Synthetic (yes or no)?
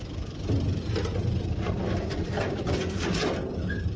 yes